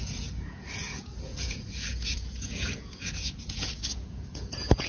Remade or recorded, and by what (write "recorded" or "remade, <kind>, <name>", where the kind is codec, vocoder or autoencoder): remade, vocoder, Vocos